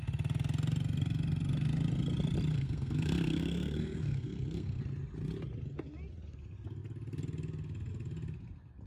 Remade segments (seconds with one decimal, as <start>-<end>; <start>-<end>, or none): 2.5-4.8